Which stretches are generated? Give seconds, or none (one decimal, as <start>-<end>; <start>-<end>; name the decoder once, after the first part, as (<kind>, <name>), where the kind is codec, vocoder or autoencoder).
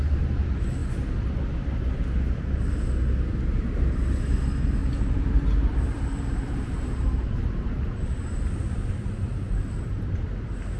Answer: 4.8-8.2 (vocoder, BigVGAN v2)